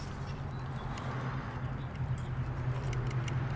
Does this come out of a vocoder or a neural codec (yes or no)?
no